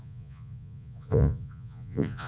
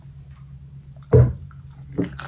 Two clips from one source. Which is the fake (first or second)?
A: first